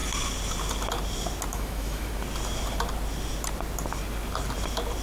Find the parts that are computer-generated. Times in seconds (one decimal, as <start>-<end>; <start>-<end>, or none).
1.5-2.1